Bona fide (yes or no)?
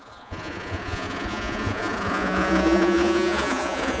no